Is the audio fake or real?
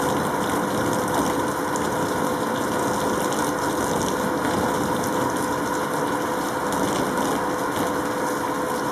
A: real